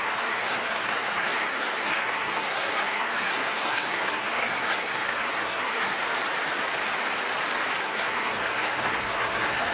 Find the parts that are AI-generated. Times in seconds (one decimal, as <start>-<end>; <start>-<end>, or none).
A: 0.0-6.0; 7.8-9.7